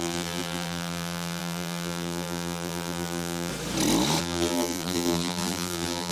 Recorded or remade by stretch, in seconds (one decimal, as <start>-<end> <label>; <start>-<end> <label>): 0.0-3.5 remade; 3.5-4.2 recorded; 4.2-6.1 remade